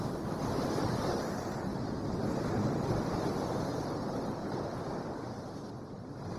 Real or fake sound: real